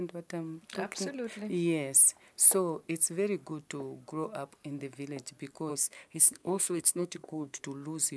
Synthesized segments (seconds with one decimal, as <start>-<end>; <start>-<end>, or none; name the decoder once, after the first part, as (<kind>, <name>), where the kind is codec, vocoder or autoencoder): 5.7-7.6 (codec, SNAC)